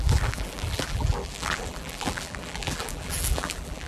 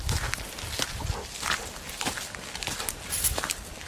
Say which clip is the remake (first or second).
first